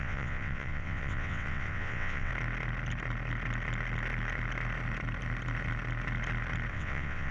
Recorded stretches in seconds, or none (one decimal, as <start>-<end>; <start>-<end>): 2.3-6.7